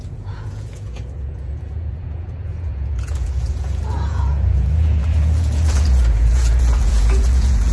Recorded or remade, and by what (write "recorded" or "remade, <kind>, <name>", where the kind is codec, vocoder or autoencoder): remade, vocoder, Vocos